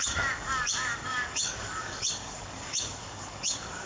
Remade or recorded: remade